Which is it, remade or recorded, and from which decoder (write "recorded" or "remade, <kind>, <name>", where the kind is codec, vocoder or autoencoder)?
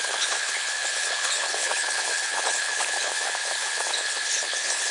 remade, codec, HILCodec